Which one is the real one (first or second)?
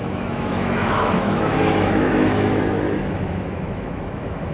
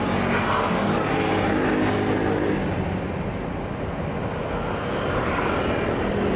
second